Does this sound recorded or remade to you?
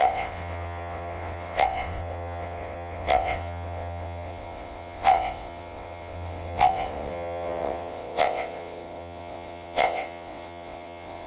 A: remade